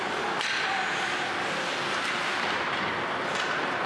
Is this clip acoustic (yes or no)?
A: yes